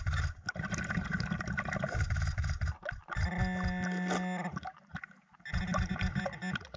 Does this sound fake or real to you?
real